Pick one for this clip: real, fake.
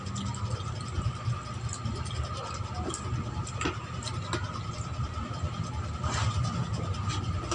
real